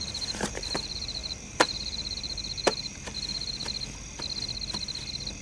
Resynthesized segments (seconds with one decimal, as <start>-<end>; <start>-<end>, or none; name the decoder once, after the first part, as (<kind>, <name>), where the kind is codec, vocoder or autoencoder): 0.0-3.6 (vocoder, BigVGAN v2)